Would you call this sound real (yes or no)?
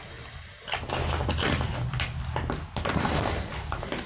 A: yes